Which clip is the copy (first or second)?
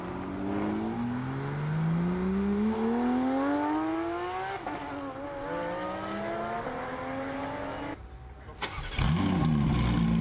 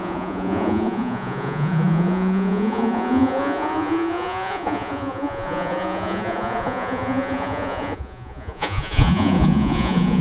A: second